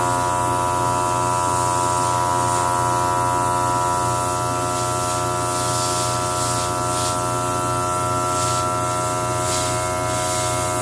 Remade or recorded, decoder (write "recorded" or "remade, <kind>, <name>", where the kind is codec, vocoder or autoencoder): recorded